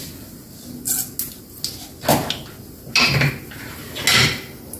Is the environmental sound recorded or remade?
recorded